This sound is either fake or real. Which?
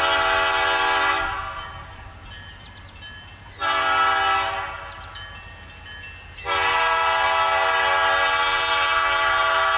real